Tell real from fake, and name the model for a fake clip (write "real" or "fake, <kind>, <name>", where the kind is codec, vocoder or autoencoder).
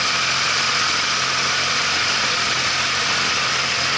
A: real